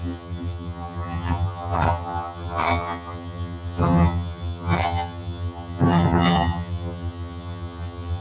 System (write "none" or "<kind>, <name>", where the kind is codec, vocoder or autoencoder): vocoder, HiFi-GAN